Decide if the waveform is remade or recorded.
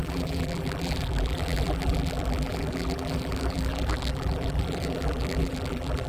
remade